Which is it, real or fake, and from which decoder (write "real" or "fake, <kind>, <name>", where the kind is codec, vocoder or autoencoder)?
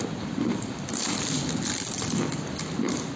real